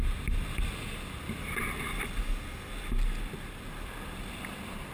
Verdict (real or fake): real